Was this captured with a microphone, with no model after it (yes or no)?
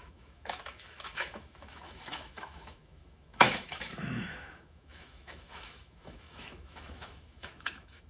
no